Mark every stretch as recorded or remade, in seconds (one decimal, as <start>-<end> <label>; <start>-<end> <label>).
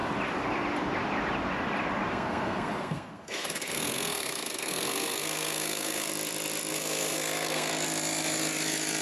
0.0-2.1 recorded; 2.1-6.1 remade; 6.1-6.7 recorded; 6.7-7.7 remade; 7.7-9.0 recorded